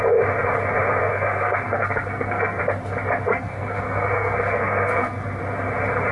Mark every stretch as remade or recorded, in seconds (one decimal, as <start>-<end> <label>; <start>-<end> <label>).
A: 0.0-1.0 recorded; 1.0-2.6 remade; 2.6-3.3 recorded; 3.3-5.4 remade; 5.4-6.1 recorded